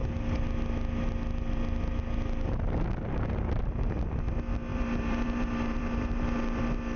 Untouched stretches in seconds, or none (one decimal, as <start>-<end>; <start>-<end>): 0.0-4.7; 6.6-7.0